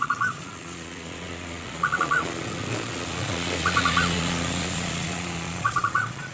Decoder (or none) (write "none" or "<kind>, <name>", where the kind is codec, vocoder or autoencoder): vocoder, Vocos